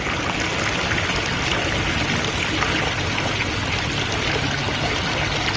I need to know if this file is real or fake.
real